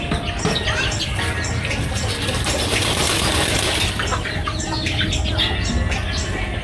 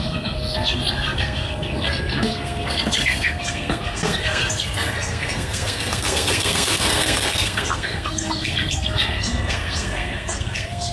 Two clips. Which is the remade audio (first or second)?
second